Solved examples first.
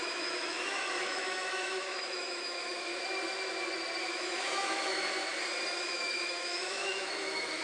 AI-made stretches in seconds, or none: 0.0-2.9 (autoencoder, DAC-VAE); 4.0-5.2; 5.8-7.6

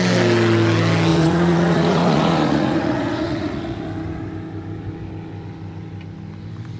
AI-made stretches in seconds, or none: 1.1-3.8 (vocoder, Vocos)

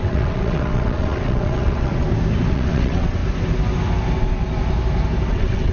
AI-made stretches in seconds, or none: 0.0-1.9 (vocoder, WaveNeXt); 2.5-3.2; 5.3-5.7

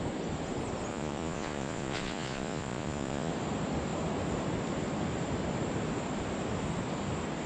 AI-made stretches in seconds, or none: 0.9-3.3 (vocoder, Vocos)

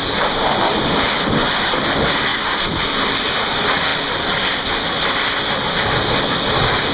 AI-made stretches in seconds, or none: 0.0-1.0 (vocoder, BigVGAN v2); 2.3-3.3

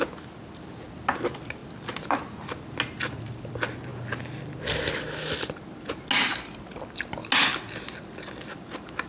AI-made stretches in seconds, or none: none

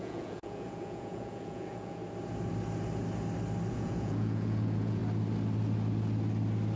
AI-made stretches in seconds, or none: 0.0-2.0 (vocoder, Vocos); 3.7-5.0